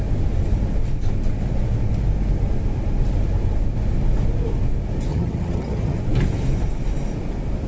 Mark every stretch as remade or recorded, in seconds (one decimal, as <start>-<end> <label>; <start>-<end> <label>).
0.0-5.1 recorded; 5.1-6.0 remade; 6.0-7.7 recorded